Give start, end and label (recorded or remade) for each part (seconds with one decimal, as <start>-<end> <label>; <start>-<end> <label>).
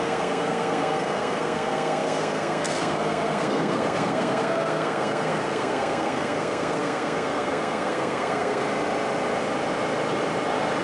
0.0-8.6 remade; 8.6-10.8 recorded